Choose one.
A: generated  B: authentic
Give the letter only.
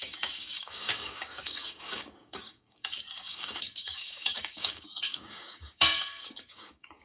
A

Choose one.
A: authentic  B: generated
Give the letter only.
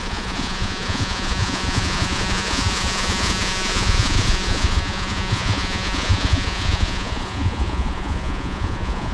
B